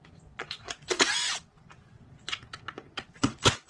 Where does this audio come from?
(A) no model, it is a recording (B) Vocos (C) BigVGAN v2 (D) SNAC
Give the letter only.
B